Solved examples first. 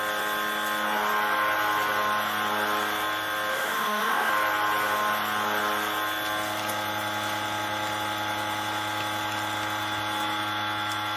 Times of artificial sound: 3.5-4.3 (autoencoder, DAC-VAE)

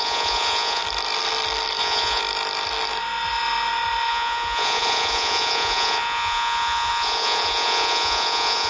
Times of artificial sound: 0.0-0.8 (vocoder, Vocos); 1.8-2.2; 4.1-8.7

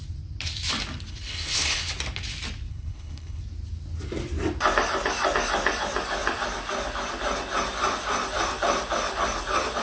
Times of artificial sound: 1.1-1.9 (codec, HILCodec); 2.7-3.4